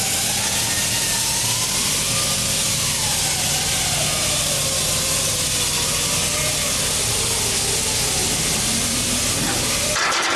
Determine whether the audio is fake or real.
real